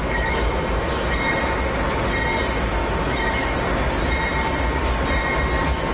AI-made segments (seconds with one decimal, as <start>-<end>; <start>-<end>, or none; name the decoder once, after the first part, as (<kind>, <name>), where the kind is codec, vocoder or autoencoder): 0.0-1.3 (autoencoder, DAC-VAE); 2.8-3.6